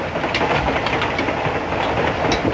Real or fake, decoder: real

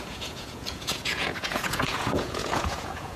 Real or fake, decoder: fake, vocoder, Vocos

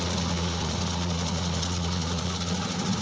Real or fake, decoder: fake, vocoder, Vocos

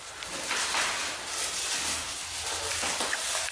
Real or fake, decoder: real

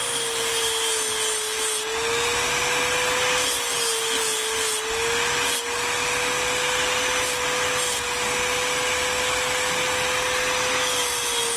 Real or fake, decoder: real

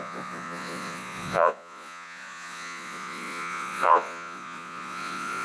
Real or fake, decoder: fake, vocoder, Vocos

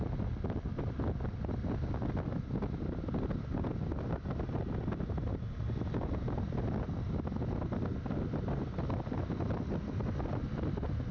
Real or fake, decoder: real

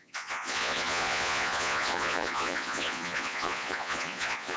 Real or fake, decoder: fake, vocoder, Vocos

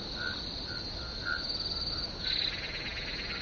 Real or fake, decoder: real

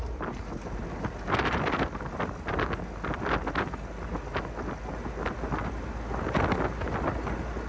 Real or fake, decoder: real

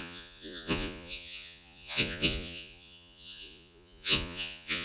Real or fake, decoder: fake, vocoder, Vocos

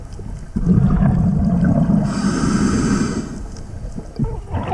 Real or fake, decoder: real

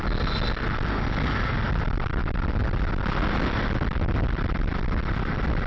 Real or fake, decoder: real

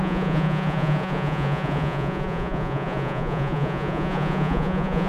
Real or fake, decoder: fake, vocoder, Vocos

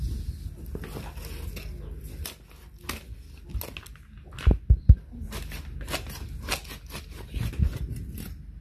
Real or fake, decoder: real